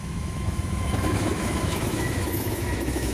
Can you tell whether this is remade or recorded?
remade